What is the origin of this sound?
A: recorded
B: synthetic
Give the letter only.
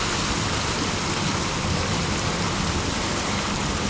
A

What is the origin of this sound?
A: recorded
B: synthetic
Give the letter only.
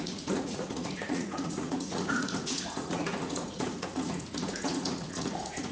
B